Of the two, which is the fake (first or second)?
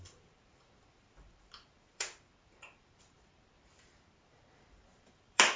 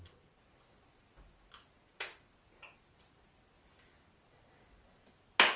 first